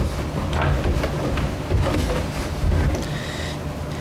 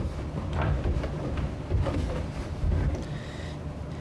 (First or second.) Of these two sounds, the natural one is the first